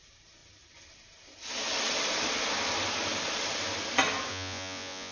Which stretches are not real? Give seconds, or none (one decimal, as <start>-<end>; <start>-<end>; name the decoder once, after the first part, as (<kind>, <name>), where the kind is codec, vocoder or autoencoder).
4.3-5.1 (vocoder, Vocos)